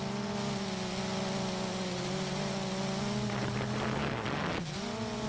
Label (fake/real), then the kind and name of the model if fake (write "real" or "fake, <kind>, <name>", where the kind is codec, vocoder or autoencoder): real